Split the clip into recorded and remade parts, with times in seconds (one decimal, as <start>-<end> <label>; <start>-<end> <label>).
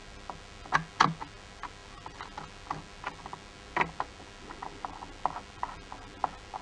0.0-6.6 recorded